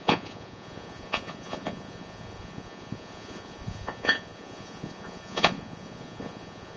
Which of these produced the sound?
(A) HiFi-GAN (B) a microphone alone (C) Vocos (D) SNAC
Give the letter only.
C